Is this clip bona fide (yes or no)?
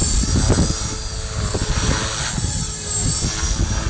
yes